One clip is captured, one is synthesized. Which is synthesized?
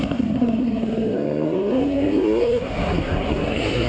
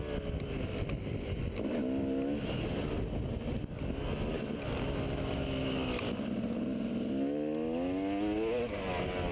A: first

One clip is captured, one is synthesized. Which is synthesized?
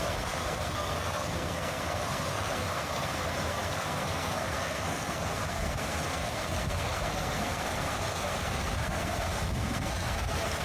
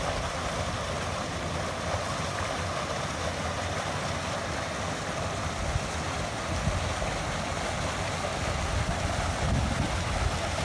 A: first